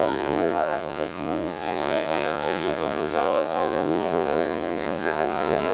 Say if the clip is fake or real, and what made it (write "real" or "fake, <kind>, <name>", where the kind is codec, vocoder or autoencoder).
fake, vocoder, Vocos